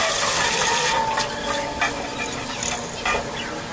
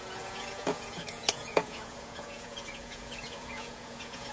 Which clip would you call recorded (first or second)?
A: first